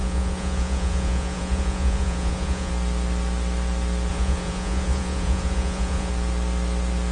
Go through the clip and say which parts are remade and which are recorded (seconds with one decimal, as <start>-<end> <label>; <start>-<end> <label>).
0.0-2.7 remade; 2.7-4.1 recorded; 4.1-6.1 remade; 6.1-7.1 recorded